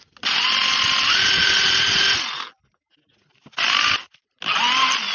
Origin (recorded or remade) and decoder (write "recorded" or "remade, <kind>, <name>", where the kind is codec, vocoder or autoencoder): recorded